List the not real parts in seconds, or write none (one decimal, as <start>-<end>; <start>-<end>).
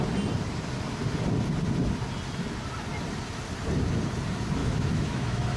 4.6-5.6